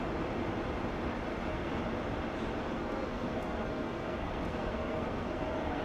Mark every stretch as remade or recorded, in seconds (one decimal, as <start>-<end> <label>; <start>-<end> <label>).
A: 0.0-1.3 recorded; 1.3-1.8 remade; 1.8-2.6 recorded; 2.6-5.8 remade